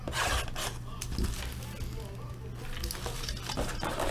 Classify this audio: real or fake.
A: real